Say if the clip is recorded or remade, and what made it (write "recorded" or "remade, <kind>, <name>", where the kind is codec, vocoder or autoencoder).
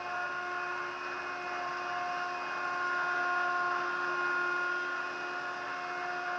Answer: recorded